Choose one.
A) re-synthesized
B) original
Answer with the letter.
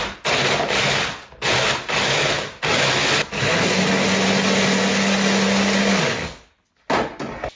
B